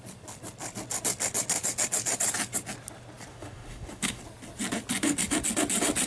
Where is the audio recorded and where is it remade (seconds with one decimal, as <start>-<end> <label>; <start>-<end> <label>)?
0.0-3.3 recorded; 3.3-4.2 remade; 4.2-6.1 recorded

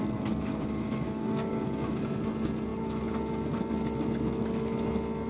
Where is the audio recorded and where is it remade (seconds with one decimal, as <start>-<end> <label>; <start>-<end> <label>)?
0.0-0.5 recorded; 0.5-2.0 remade; 2.0-5.3 recorded

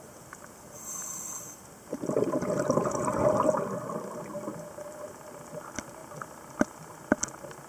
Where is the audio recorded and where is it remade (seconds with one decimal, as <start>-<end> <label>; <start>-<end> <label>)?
0.0-7.7 recorded

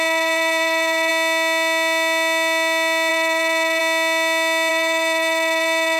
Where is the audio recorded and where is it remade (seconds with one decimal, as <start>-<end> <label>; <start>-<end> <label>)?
0.0-1.1 remade; 1.1-3.1 recorded; 3.1-3.8 remade; 3.8-4.7 recorded; 4.7-6.0 remade

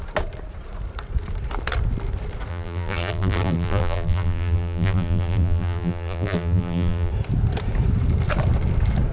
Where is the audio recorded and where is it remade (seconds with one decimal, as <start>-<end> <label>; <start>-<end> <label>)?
0.0-2.5 recorded; 2.5-7.1 remade; 7.1-9.1 recorded

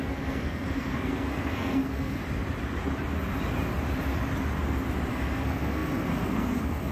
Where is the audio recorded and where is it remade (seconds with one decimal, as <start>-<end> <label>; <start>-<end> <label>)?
0.0-2.2 remade; 2.2-5.1 recorded; 5.1-6.9 remade

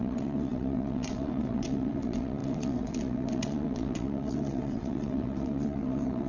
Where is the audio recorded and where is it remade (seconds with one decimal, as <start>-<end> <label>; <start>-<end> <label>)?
0.0-6.3 remade

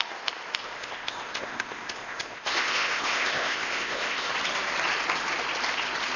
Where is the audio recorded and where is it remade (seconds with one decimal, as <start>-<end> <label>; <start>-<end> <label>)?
0.0-0.6 recorded; 0.6-4.3 remade; 4.3-6.2 recorded